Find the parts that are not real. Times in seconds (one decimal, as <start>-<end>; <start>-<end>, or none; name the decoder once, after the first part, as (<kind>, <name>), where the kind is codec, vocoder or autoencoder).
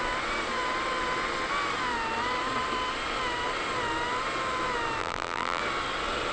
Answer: 5.0-5.6 (vocoder, BigVGAN v2)